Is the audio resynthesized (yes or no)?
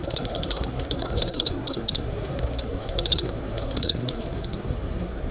yes